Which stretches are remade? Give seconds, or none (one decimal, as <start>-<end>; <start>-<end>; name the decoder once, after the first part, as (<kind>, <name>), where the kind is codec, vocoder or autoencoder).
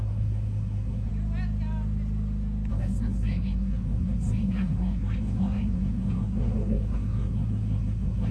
0.0-1.1 (codec, SNAC); 2.7-8.3